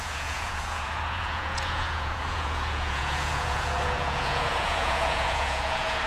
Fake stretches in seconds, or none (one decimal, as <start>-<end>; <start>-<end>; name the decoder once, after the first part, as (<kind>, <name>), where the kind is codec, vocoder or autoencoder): 0.0-6.1 (vocoder, Vocos)